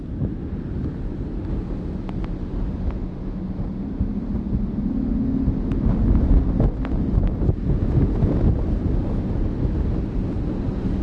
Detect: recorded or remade recorded